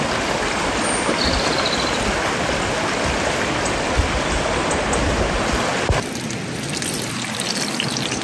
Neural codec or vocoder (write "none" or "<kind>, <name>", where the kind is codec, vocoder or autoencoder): none